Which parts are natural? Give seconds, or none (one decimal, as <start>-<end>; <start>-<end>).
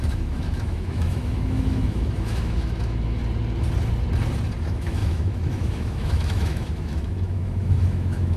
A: 3.2-4.6